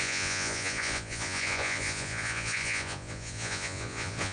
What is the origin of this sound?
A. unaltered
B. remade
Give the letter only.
B